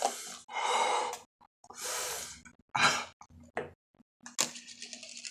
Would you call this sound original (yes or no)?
yes